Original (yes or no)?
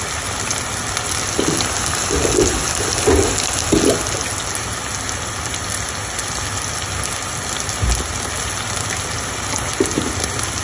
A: yes